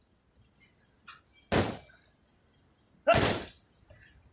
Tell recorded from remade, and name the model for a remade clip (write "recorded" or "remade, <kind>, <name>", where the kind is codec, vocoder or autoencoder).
recorded